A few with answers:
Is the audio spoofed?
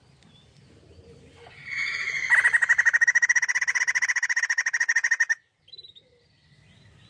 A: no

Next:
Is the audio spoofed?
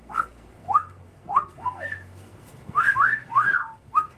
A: yes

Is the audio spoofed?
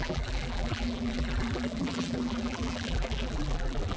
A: yes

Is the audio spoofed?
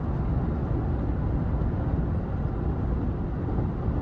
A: no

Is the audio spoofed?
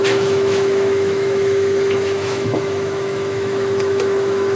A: yes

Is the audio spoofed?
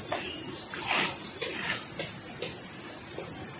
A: no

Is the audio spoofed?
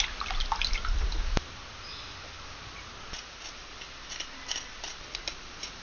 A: no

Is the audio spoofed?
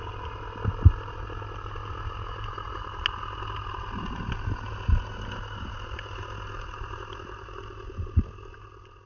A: no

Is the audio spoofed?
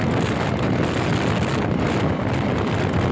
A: yes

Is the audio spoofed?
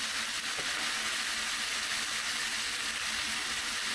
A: no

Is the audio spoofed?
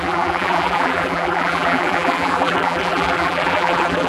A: yes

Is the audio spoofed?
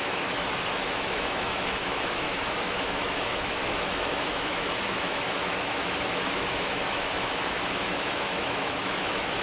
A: yes